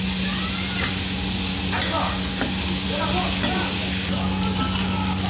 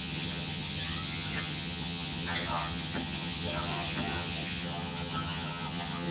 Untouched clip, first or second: first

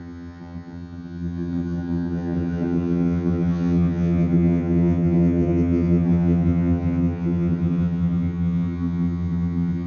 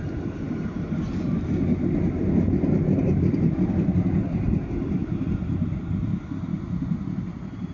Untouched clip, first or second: second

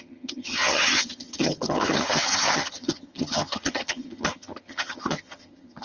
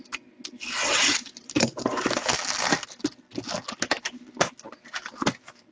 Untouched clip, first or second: second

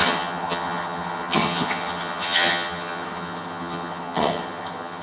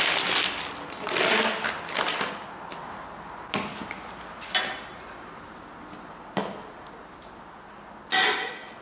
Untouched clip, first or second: second